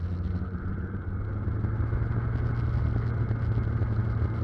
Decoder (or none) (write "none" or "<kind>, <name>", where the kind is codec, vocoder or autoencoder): none